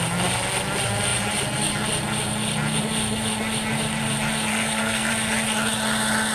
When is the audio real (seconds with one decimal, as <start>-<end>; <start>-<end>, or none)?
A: 0.0-4.5; 5.1-6.3